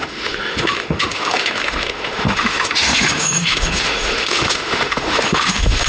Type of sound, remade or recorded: remade